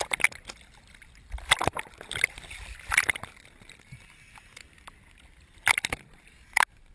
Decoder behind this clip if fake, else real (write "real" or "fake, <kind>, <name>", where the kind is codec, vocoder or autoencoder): real